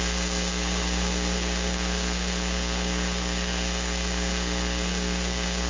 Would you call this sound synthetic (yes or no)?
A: yes